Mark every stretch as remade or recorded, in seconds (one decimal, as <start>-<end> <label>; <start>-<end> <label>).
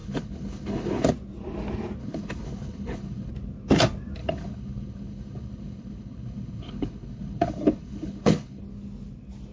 0.0-1.1 remade; 1.1-2.0 recorded; 2.0-3.3 remade; 3.3-4.2 recorded; 4.2-8.6 remade; 8.6-9.5 recorded